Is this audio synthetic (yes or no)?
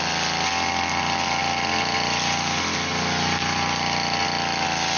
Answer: no